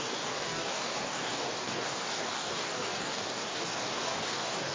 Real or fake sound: fake